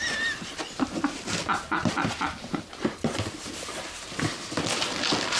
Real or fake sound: real